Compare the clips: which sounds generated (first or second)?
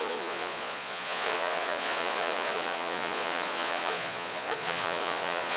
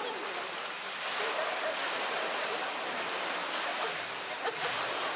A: first